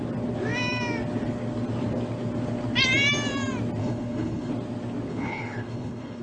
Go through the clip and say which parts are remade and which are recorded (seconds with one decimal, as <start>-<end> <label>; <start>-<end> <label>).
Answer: 0.0-3.8 recorded; 3.8-4.5 remade; 4.5-5.1 recorded; 5.1-6.2 remade